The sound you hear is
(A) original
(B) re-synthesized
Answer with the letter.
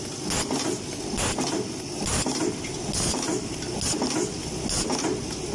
A